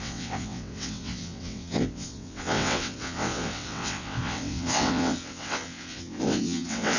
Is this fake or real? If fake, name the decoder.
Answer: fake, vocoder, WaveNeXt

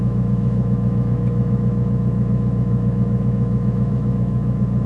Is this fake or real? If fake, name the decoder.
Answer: fake, autoencoder, DAC-VAE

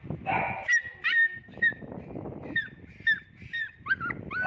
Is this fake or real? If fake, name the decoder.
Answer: real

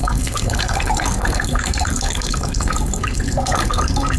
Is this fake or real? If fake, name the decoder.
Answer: fake, codec, SNAC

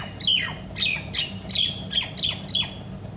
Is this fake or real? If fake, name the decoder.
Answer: real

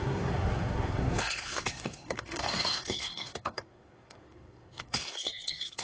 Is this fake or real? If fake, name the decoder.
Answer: fake, codec, SNAC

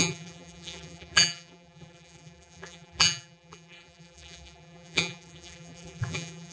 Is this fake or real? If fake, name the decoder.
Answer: fake, vocoder, BigVGAN v2